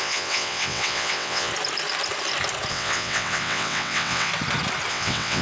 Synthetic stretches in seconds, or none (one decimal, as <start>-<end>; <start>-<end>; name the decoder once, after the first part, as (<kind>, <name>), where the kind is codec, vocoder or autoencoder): 0.0-1.5 (vocoder, WaveNeXt); 2.7-4.3; 4.9-5.4